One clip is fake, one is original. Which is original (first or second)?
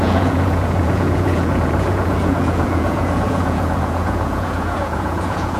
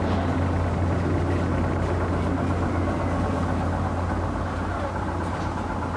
second